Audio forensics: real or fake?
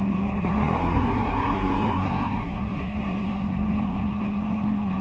fake